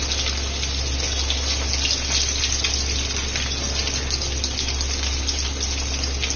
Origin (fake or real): real